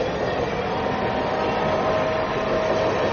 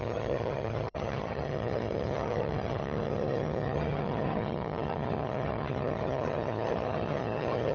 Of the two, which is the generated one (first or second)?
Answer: second